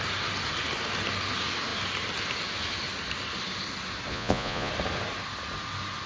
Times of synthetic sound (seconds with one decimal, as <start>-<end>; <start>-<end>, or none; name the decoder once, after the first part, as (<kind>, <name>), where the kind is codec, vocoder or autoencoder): 4.1-4.7 (vocoder, Vocos)